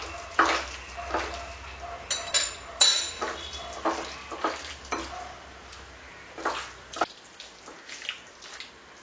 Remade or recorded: recorded